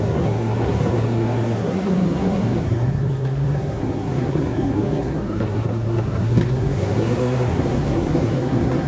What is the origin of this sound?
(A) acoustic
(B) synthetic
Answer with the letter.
B